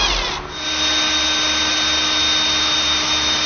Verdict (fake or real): real